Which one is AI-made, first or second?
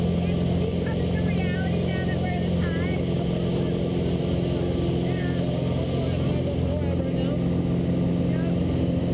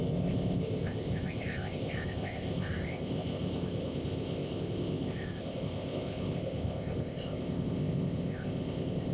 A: second